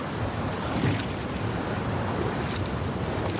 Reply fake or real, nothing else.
real